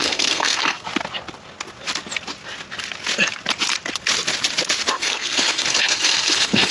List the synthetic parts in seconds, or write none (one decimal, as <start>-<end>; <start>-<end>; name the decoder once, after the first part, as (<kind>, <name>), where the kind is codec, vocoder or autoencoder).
0.0-0.9 (codec, SNAC); 4.9-6.7